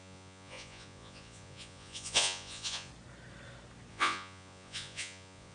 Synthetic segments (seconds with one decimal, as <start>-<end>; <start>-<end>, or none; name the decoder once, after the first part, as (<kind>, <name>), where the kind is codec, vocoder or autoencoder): 0.0-2.9 (vocoder, Vocos); 3.9-5.5